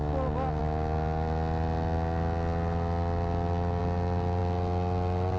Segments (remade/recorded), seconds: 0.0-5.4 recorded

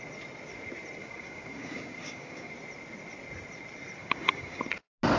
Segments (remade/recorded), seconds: 0.0-1.0 recorded; 1.0-2.5 remade; 2.5-4.0 recorded; 4.0-4.6 remade; 4.6-5.2 recorded

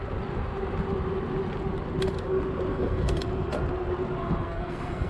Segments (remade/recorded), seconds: 0.0-2.7 recorded; 2.7-3.2 remade; 3.2-4.2 recorded; 4.2-5.1 remade

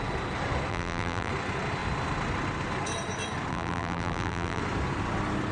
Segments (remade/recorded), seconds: 0.0-0.7 recorded; 0.7-1.3 remade; 1.3-3.5 recorded; 3.5-4.6 remade; 4.6-5.5 recorded

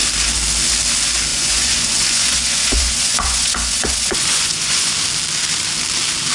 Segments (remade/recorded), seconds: 0.0-1.3 recorded; 1.3-4.9 remade; 4.9-6.3 recorded

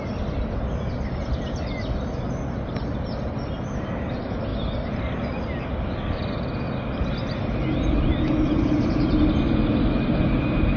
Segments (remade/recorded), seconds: 0.0-10.8 recorded

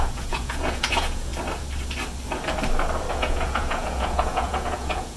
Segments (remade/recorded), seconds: 0.0-1.3 remade; 1.3-3.1 recorded; 3.1-5.2 remade

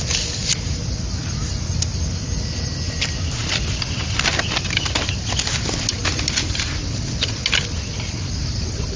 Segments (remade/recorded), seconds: 0.0-9.0 recorded